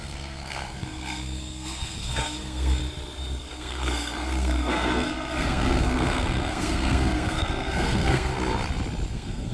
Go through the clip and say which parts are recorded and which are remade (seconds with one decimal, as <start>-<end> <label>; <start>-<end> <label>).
0.0-2.8 remade; 2.8-3.4 recorded; 3.4-8.3 remade; 8.3-9.1 recorded; 9.1-9.5 remade